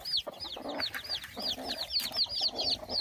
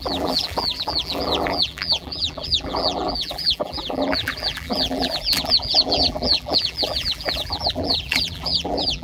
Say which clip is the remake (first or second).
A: second